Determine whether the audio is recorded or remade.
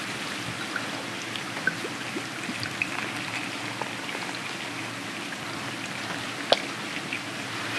recorded